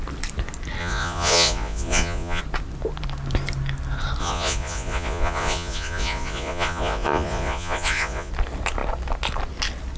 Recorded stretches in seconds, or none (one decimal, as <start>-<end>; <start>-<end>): 0.0-0.8; 2.4-4.2; 8.3-10.0

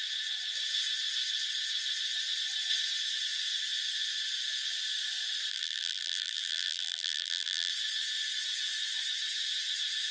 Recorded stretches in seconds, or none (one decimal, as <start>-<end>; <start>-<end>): 0.0-5.5; 7.7-10.1

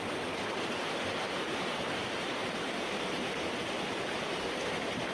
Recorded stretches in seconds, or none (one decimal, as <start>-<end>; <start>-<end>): 0.0-2.4; 3.3-5.1

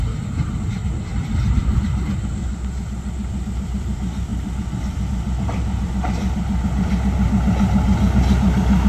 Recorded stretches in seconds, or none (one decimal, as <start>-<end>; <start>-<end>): 0.0-1.1; 2.0-8.9

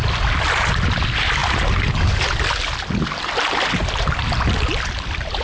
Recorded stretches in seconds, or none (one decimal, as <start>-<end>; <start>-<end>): 0.0-5.4

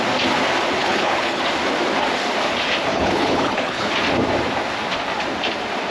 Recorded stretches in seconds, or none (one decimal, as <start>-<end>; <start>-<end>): 0.0-0.8; 1.4-2.9; 3.9-5.9

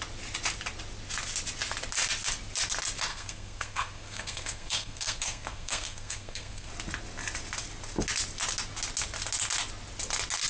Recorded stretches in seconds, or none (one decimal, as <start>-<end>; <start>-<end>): 0.0-3.1; 6.7-10.5